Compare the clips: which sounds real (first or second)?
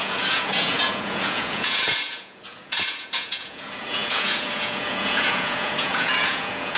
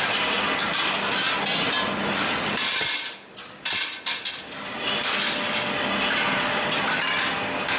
second